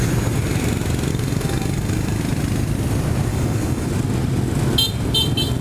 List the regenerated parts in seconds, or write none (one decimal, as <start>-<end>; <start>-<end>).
1.1-2.2; 3.3-3.9